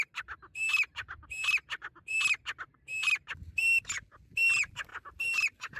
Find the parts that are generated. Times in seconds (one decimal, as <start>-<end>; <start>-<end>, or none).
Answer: 4.9-5.8